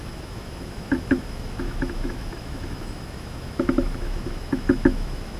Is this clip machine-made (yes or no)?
yes